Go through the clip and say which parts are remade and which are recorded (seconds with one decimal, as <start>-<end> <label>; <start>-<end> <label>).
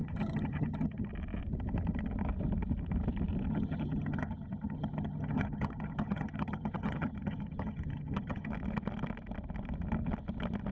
0.0-1.1 remade; 1.1-3.5 recorded; 3.5-8.5 remade; 8.5-10.7 recorded